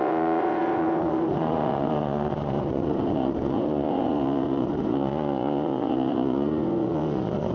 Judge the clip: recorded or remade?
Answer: remade